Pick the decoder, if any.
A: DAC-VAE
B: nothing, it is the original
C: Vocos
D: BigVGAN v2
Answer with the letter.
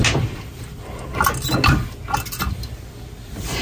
B